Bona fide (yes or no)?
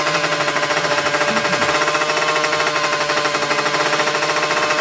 yes